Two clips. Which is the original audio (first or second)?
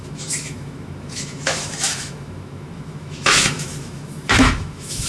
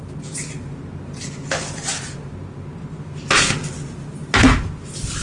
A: second